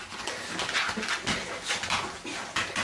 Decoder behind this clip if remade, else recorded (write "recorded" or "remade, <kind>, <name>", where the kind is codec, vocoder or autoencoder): recorded